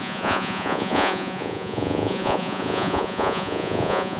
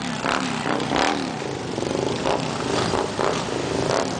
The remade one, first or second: first